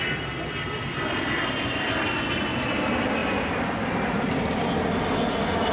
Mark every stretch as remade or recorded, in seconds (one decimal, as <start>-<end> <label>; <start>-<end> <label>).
0.0-5.7 recorded